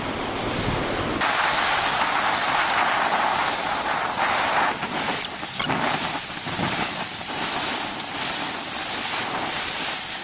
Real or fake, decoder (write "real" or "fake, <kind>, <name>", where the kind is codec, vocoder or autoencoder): real